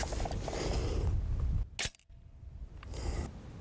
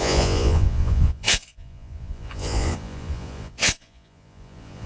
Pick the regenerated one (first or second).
second